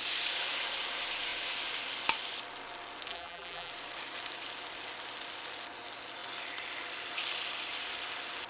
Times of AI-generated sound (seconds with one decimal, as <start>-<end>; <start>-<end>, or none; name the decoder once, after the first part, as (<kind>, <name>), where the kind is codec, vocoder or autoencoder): 3.1-3.7 (vocoder, BigVGAN v2)